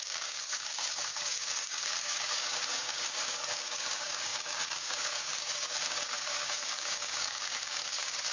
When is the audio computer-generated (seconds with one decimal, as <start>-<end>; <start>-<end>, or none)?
0.0-8.3